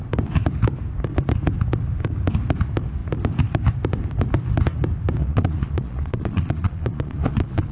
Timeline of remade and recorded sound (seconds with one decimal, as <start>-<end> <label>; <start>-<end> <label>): 0.0-5.2 recorded; 5.2-7.7 remade